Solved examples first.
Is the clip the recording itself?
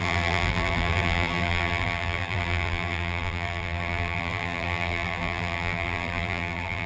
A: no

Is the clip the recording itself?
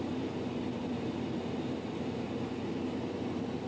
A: yes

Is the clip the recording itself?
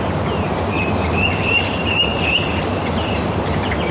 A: no